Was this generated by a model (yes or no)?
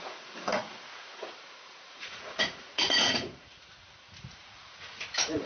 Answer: yes